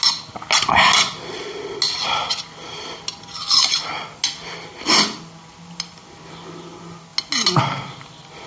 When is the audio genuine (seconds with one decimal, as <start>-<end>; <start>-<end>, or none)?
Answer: 0.0-8.5